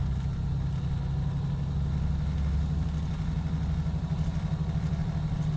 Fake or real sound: real